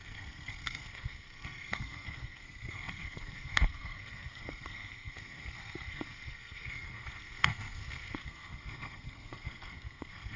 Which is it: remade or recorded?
remade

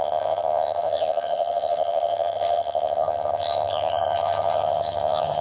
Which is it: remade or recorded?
remade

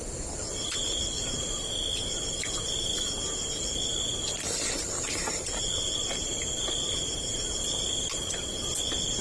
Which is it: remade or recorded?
recorded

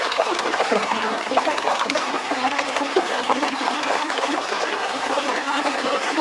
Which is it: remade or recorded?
remade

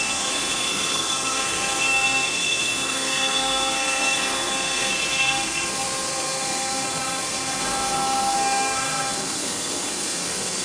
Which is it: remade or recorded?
remade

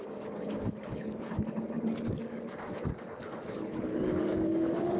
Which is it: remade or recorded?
remade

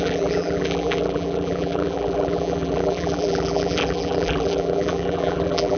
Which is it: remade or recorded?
remade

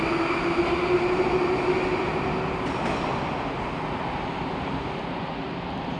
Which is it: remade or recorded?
recorded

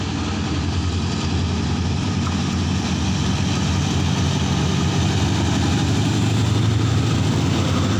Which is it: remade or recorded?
recorded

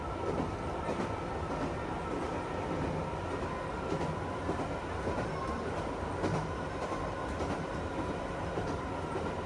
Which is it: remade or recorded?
recorded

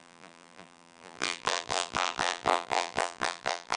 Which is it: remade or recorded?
remade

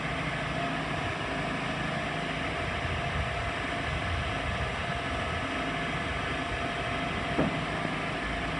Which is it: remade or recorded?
recorded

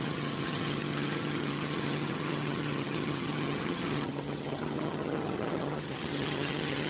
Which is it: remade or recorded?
remade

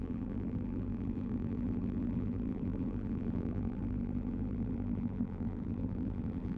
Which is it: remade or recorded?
remade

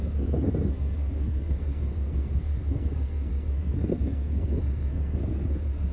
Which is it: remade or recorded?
remade